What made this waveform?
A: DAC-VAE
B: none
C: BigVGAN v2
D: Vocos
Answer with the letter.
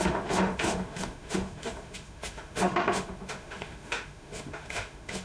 A